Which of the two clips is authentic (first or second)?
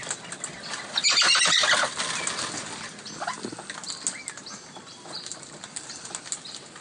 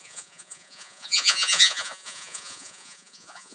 first